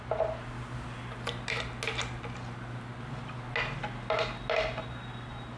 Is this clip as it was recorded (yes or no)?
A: yes